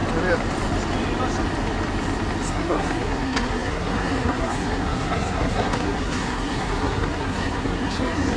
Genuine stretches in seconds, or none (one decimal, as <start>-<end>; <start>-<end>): 0.0-2.5